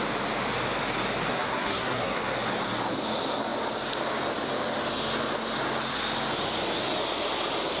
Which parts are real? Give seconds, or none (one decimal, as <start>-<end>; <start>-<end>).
0.0-1.3; 2.2-7.8